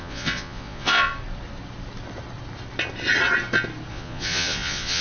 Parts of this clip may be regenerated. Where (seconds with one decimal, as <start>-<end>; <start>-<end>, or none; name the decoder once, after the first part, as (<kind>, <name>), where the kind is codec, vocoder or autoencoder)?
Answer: 0.0-1.1 (vocoder, Vocos); 3.9-5.0